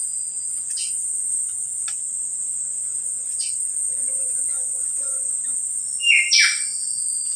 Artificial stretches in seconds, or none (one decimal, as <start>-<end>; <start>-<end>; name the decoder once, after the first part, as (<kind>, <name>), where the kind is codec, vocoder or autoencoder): 0.0-1.3 (vocoder, Vocos); 2.3-5.3